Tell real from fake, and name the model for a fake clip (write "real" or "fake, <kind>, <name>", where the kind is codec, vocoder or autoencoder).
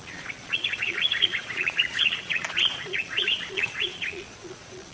fake, vocoder, Vocos